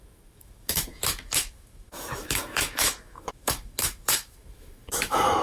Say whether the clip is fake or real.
fake